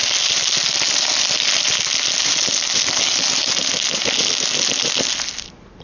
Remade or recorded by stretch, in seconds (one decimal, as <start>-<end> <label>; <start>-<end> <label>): 0.0-5.8 recorded